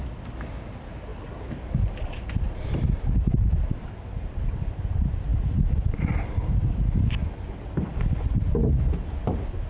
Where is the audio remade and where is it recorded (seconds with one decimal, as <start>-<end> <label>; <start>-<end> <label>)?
0.0-9.7 recorded